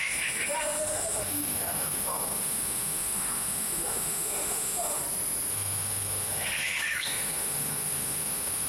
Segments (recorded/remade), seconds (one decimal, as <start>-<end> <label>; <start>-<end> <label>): 0.0-5.0 remade; 5.0-5.5 recorded; 5.5-8.7 remade